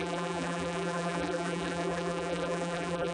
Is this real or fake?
fake